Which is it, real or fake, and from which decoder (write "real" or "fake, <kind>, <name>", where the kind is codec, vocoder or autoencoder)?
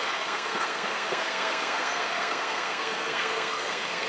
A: fake, codec, SNAC